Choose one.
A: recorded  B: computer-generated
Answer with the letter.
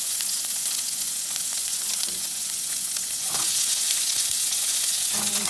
B